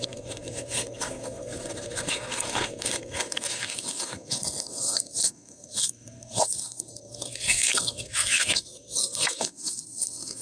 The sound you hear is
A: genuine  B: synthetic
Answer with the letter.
B